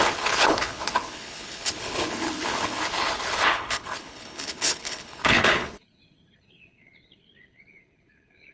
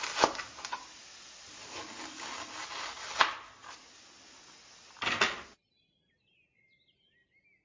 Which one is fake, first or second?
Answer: first